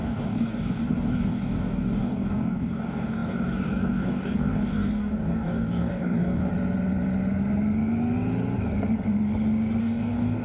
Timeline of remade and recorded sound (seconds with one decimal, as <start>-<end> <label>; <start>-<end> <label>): 0.0-6.5 remade; 6.5-9.8 recorded; 9.8-10.4 remade